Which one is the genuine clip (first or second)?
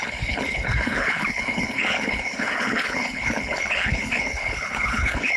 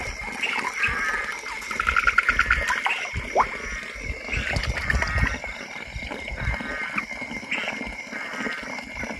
second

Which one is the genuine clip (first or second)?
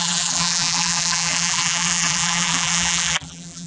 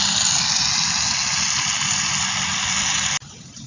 second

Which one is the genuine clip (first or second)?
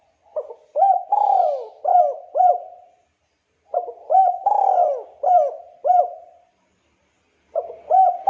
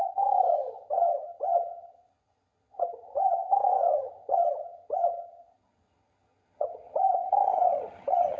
first